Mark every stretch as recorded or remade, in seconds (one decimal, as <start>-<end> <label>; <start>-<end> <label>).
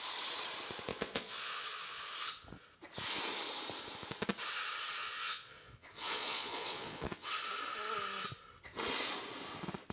0.0-0.9 recorded; 0.9-2.0 remade; 2.0-5.0 recorded; 5.0-7.3 remade; 7.3-9.9 recorded